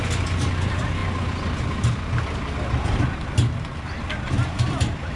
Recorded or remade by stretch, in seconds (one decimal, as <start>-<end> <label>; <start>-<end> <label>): 0.0-5.2 recorded